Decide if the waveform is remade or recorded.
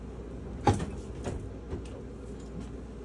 recorded